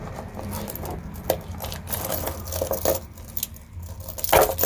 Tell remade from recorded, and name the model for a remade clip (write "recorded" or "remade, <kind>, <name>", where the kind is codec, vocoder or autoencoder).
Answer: recorded